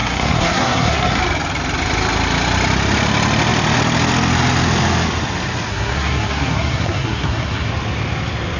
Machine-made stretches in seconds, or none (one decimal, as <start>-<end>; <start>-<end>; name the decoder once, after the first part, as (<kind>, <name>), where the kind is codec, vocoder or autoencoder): 0.0-1.2 (codec, SNAC); 5.7-7.7